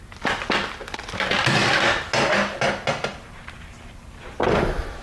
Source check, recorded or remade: recorded